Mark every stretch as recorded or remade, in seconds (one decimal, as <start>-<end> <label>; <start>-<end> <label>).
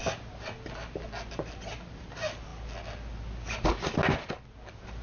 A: 0.0-5.0 recorded